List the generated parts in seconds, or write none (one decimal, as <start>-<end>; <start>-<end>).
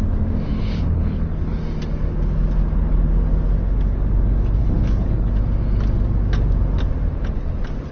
0.5-1.6; 4.6-5.3